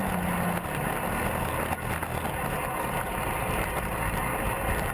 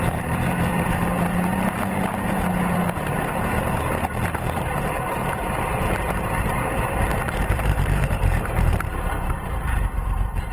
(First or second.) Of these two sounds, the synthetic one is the second